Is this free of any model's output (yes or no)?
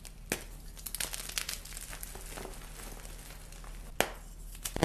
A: yes